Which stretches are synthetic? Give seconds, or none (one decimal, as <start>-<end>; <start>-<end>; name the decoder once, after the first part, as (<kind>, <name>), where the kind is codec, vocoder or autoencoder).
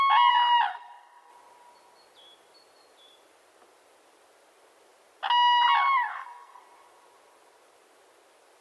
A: 0.7-1.3 (codec, SNAC); 6.1-6.6